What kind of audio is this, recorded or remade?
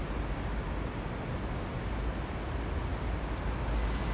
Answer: recorded